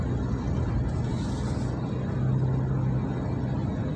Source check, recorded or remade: recorded